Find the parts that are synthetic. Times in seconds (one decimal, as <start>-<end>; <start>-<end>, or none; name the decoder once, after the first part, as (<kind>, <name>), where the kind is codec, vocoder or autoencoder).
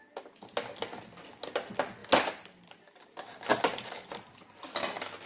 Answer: none